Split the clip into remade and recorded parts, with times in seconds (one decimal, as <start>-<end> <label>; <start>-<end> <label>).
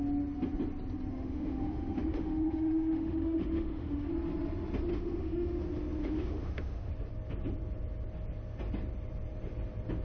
0.0-1.1 recorded; 1.1-4.1 remade; 4.1-4.9 recorded; 4.9-5.6 remade; 5.6-6.0 recorded; 6.0-6.9 remade; 6.9-10.0 recorded